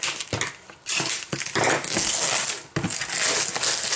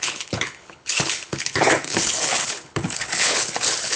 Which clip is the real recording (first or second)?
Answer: first